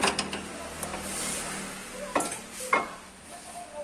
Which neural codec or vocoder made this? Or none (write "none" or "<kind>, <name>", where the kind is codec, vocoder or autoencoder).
none